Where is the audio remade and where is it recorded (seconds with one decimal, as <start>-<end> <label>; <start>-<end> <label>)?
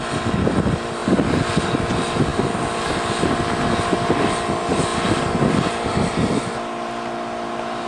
0.0-7.9 recorded